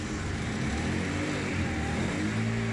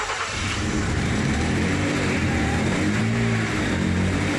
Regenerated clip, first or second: second